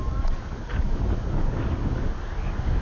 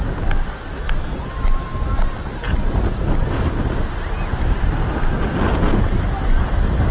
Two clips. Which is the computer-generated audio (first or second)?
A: first